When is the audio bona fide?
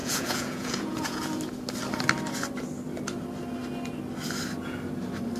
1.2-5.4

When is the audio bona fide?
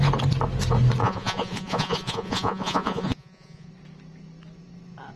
0.0-1.0; 3.7-5.2